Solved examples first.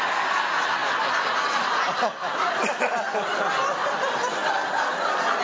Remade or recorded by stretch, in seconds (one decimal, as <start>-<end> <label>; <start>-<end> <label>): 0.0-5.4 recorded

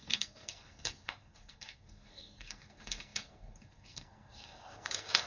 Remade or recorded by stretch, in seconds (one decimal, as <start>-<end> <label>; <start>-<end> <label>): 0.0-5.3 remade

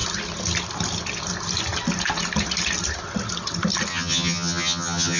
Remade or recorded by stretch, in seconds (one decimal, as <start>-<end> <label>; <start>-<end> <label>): 0.0-3.9 recorded; 3.9-5.2 remade

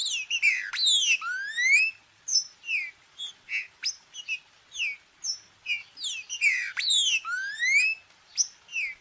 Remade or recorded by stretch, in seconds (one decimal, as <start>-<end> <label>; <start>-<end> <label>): 0.0-0.7 remade; 0.7-2.3 recorded; 2.3-3.3 remade; 3.3-6.2 recorded; 6.2-7.1 remade; 7.1-9.0 recorded

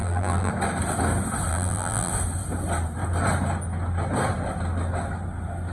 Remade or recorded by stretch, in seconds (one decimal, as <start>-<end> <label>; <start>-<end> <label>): 0.0-0.5 remade; 0.5-1.5 recorded; 1.5-2.1 remade; 2.1-5.7 recorded

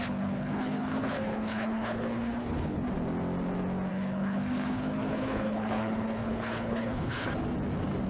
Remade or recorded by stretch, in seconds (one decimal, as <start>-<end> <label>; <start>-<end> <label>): 0.0-2.8 remade; 2.8-3.9 recorded; 3.9-7.3 remade; 7.3-8.1 recorded

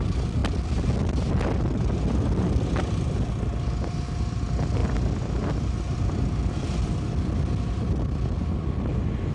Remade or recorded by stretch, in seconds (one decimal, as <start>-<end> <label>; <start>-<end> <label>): 0.0-9.3 recorded